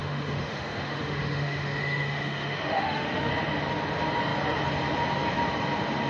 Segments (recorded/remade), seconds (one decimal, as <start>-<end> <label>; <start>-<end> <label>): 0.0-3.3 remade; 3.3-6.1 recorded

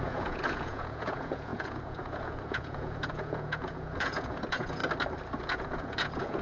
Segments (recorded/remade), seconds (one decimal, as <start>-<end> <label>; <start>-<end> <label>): 0.0-4.8 remade; 4.8-5.4 recorded; 5.4-6.4 remade

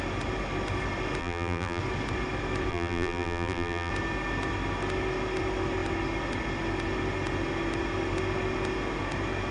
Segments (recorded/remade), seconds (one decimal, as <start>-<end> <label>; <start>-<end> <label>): 0.0-1.2 recorded; 1.2-1.8 remade; 1.8-2.7 recorded; 2.7-3.9 remade; 3.9-9.5 recorded